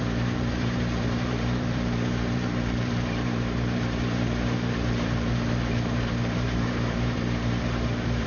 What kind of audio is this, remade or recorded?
remade